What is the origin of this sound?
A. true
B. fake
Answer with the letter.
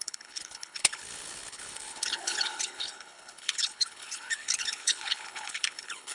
B